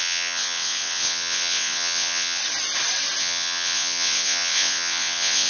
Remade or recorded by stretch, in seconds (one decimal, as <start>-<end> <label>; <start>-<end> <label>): 0.0-2.4 remade; 2.4-3.2 recorded; 3.2-5.5 remade